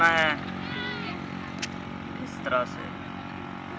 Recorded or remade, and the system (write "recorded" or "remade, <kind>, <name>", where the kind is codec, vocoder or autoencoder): recorded